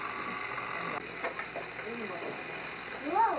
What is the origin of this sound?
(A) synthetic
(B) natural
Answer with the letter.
B